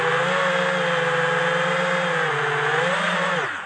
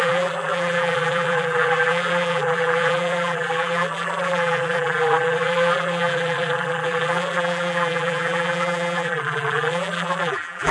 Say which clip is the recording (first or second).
first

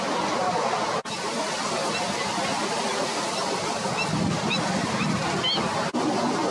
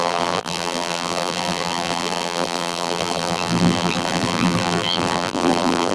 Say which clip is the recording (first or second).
first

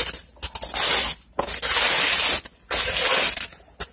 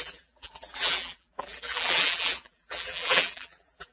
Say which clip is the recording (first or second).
first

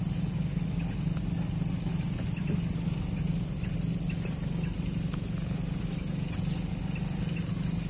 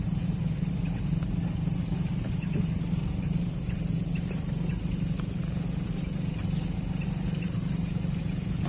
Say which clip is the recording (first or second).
first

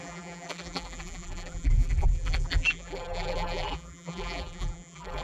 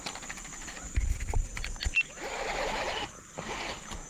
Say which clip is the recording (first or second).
second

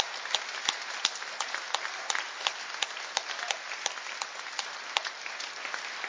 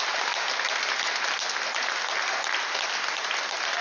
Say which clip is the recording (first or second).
second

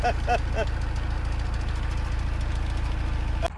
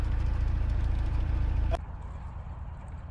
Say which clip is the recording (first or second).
first